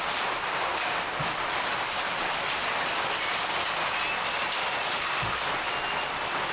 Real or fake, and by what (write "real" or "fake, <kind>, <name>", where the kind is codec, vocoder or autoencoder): real